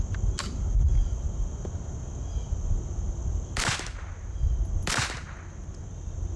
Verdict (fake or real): real